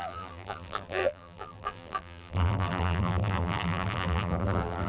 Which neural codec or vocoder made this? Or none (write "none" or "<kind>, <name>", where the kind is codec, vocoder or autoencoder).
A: vocoder, BigVGAN v2